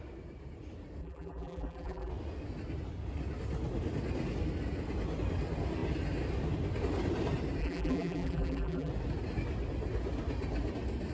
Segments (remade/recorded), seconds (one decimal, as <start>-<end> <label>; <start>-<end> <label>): 0.0-1.0 recorded; 1.0-2.1 remade; 2.1-7.6 recorded; 7.6-8.9 remade; 8.9-11.1 recorded